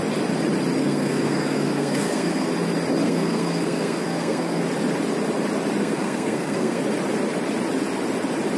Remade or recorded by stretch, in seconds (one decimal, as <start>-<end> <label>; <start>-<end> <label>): 0.0-0.8 recorded; 0.8-2.5 remade; 2.5-3.0 recorded; 3.0-4.6 remade; 4.6-5.8 recorded; 5.8-6.8 remade; 6.8-8.6 recorded